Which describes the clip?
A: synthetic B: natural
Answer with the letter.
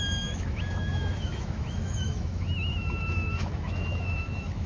A